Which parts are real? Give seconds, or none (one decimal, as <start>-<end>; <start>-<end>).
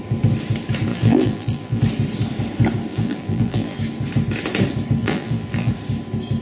0.0-0.9; 1.8-2.9; 3.8-5.0; 5.7-6.4